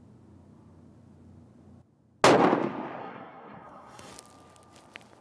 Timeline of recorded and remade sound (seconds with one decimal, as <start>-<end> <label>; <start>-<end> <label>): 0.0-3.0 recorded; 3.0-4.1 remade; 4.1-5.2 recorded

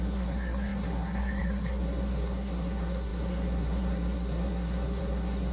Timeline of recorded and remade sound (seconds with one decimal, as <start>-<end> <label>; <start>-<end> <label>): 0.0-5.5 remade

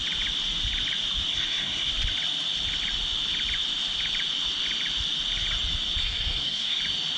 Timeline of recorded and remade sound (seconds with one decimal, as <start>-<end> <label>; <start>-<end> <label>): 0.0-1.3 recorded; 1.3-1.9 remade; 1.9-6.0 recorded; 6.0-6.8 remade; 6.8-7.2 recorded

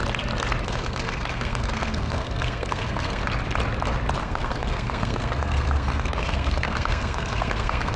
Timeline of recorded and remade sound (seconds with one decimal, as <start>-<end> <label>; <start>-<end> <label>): 0.0-0.6 recorded; 0.6-3.2 remade; 3.2-4.2 recorded; 4.2-8.0 remade

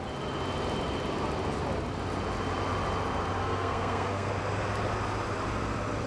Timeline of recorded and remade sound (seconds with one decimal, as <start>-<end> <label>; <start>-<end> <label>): 0.0-3.4 recorded; 3.4-4.3 remade; 4.3-6.1 recorded

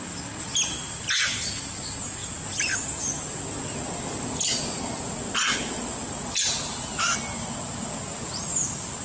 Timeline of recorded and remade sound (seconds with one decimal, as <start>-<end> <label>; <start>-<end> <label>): 0.0-9.0 recorded

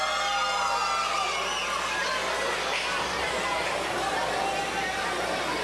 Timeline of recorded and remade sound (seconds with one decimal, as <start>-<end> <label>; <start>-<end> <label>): 0.0-5.6 recorded